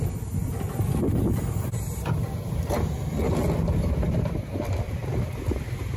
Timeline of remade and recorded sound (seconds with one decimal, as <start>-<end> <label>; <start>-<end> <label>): 0.0-6.0 recorded